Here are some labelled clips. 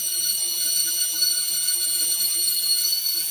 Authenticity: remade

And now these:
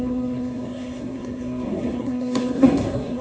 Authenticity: remade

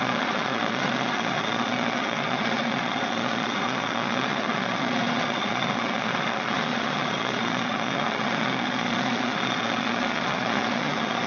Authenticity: remade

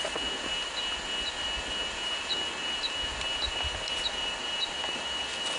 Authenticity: recorded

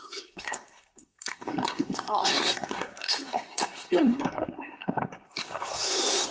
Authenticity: remade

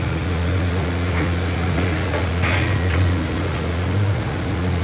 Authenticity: remade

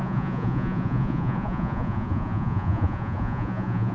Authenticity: remade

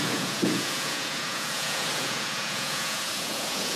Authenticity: remade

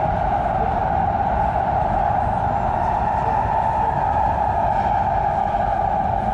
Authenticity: recorded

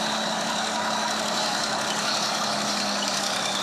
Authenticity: remade